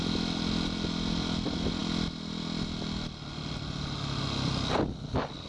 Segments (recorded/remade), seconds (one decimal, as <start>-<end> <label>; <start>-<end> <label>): 0.0-5.5 recorded